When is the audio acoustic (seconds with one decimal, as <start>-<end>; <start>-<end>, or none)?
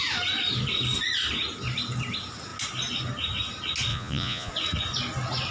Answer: 0.0-3.9; 4.5-5.5